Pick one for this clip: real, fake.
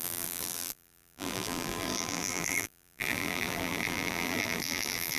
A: fake